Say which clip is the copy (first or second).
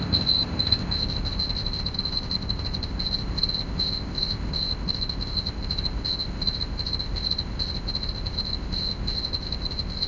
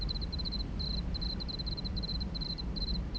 first